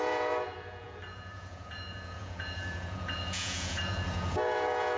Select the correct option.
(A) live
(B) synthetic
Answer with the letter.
B